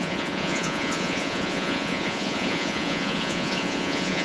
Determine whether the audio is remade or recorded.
remade